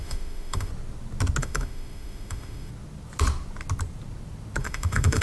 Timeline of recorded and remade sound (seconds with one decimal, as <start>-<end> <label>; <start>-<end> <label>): 0.0-0.7 remade; 0.7-1.4 recorded; 1.4-2.7 remade; 2.7-4.6 recorded; 4.6-5.2 remade